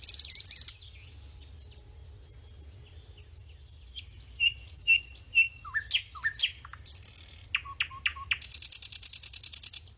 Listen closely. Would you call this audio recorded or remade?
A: recorded